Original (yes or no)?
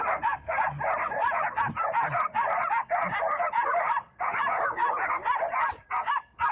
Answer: yes